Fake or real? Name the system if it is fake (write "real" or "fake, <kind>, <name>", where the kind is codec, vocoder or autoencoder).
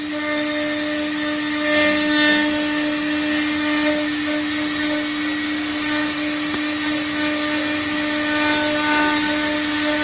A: real